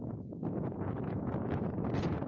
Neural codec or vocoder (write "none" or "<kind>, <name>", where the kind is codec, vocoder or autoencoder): vocoder, Vocos